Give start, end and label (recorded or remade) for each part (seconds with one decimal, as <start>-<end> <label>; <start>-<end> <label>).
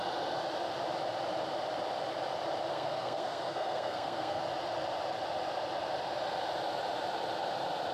0.0-2.7 recorded; 2.7-4.4 remade; 4.4-7.9 recorded